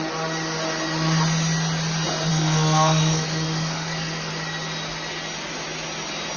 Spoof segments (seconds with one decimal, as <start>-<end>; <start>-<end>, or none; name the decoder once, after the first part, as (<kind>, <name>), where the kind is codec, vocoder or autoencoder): 2.3-4.3 (codec, SNAC)